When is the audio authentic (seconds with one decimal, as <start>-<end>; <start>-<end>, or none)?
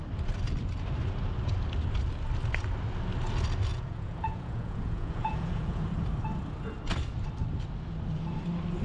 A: 0.0-3.7; 5.8-8.8